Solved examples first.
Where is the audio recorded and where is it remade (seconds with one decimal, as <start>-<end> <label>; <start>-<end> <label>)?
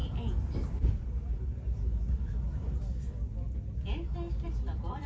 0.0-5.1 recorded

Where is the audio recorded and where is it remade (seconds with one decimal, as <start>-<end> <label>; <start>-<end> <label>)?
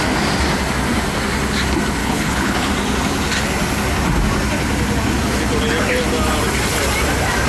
0.0-2.0 recorded; 2.0-2.7 remade; 2.7-7.5 recorded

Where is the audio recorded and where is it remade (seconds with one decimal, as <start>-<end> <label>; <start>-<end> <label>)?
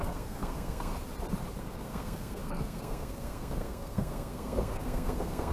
0.0-0.9 remade; 0.9-1.6 recorded; 1.6-5.5 remade